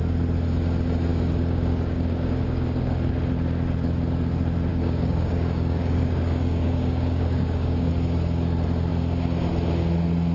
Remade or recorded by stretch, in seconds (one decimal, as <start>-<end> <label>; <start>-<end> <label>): 0.0-1.1 recorded; 1.1-3.1 remade; 3.1-4.7 recorded; 4.7-7.9 remade; 7.9-10.3 recorded